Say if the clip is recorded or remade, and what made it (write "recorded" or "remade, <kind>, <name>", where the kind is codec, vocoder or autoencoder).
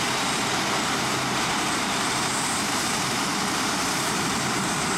remade, vocoder, BigVGAN v2